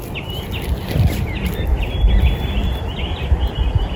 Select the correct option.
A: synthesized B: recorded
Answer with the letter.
B